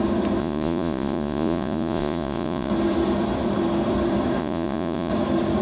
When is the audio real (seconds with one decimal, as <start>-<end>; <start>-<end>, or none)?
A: 0.0-0.4; 2.7-4.4; 5.1-5.6